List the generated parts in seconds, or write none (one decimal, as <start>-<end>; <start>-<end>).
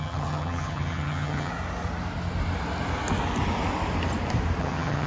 0.0-1.5; 4.6-5.1